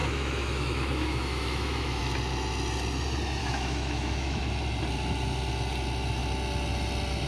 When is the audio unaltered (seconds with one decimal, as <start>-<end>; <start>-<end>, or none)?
2.0-3.4; 4.4-7.3